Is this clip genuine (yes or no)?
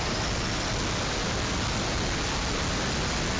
yes